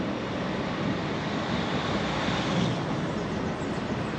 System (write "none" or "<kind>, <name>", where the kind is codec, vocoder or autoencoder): none